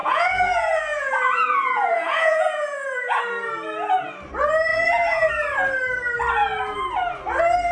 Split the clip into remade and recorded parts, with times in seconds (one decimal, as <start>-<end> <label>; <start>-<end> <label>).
0.0-3.2 remade; 3.2-4.7 recorded; 4.7-5.3 remade; 5.3-7.7 recorded